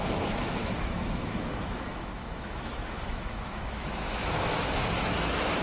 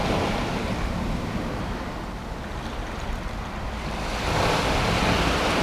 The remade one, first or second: first